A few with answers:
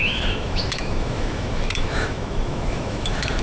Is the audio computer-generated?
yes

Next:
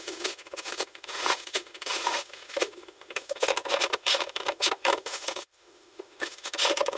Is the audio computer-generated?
yes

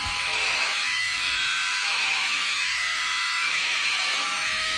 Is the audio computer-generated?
yes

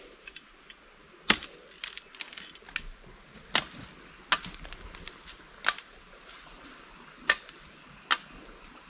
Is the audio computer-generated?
no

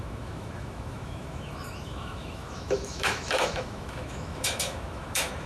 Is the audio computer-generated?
yes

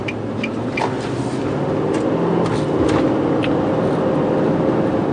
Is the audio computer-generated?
no